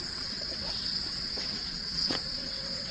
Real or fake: fake